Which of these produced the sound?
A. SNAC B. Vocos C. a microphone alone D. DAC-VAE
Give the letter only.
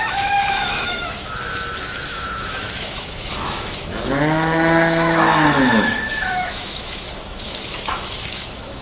D